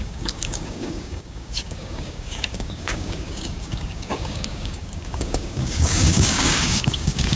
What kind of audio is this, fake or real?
fake